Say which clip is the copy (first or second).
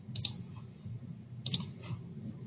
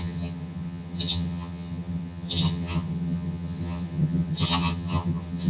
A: second